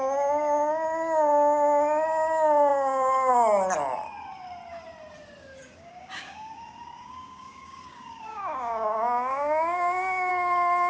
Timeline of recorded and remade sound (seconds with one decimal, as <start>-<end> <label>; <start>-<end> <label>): 0.0-5.6 recorded; 5.6-10.3 remade; 10.3-10.9 recorded